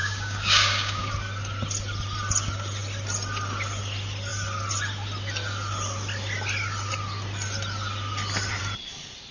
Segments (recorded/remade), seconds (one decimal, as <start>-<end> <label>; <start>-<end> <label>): 0.0-1.1 remade; 1.1-9.3 recorded

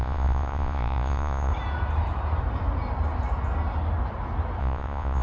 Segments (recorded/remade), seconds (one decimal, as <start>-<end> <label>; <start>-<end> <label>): 0.0-1.5 remade; 1.5-4.6 recorded; 4.6-5.2 remade

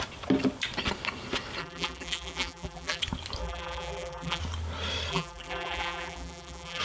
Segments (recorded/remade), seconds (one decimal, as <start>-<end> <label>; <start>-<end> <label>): 0.0-1.6 recorded; 1.6-3.0 remade; 3.0-3.4 recorded; 3.4-4.4 remade; 4.4-5.1 recorded; 5.1-6.8 remade

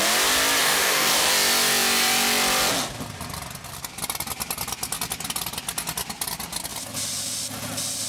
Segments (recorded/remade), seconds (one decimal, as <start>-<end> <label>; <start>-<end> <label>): 0.0-0.6 recorded; 0.6-1.3 remade; 1.3-8.1 recorded

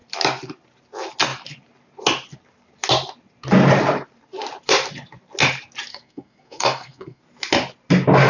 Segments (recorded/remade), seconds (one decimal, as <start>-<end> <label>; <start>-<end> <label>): 0.0-5.9 recorded; 5.9-7.2 remade; 7.2-8.3 recorded

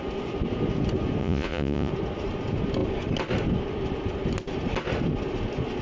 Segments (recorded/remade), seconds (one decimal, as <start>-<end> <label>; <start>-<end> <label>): 0.0-1.2 recorded; 1.2-1.9 remade; 1.9-5.8 recorded